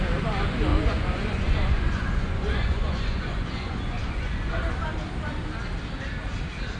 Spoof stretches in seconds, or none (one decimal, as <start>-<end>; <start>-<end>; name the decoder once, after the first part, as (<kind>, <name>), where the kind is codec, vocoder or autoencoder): 0.7-4.5 (vocoder, Vocos)